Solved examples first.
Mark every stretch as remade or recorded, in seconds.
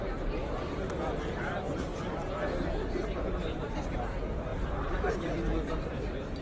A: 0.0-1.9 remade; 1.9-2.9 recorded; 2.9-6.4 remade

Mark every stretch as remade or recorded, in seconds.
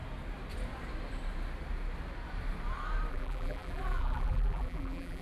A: 0.0-3.1 recorded; 3.1-5.2 remade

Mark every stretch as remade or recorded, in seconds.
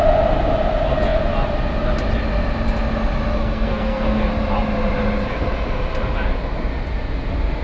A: 0.0-3.4 recorded; 3.4-4.3 remade; 4.3-7.6 recorded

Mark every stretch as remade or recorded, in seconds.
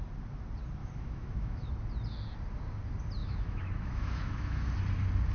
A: 0.0-0.8 recorded; 0.8-1.7 remade; 1.7-3.2 recorded; 3.2-4.7 remade; 4.7-5.3 recorded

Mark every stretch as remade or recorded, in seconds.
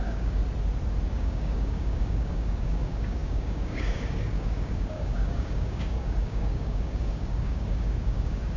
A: 0.0-0.4 remade; 0.4-1.1 recorded; 1.1-8.6 remade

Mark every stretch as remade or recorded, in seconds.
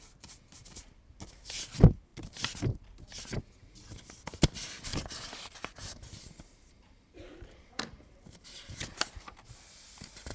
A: 0.0-2.1 recorded; 2.1-3.4 remade; 3.4-4.9 recorded; 4.9-9.4 remade; 9.4-10.3 recorded